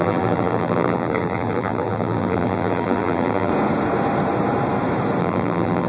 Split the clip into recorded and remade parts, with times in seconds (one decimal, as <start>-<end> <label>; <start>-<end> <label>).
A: 0.0-3.5 remade; 3.5-5.2 recorded; 5.2-5.9 remade